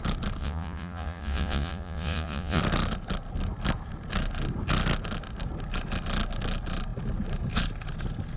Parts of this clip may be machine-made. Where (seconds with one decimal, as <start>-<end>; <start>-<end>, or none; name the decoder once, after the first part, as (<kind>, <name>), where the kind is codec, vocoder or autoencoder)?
0.4-2.6 (vocoder, Vocos)